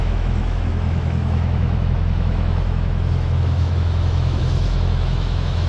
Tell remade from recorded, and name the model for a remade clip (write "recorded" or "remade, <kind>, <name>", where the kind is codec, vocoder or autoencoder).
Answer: remade, autoencoder, DAC-VAE